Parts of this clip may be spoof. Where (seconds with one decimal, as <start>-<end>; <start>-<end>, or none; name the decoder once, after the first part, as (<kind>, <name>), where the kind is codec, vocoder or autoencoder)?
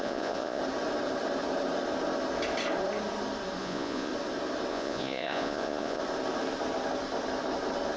0.0-0.6 (vocoder, Vocos); 3.6-4.1; 4.7-6.0